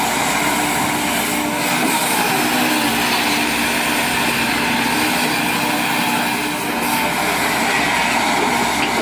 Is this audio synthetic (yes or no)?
no